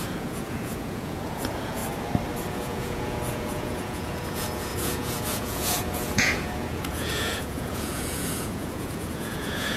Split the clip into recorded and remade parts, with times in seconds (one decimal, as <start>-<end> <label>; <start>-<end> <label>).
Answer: 0.0-1.8 remade; 1.8-2.5 recorded; 2.5-9.8 remade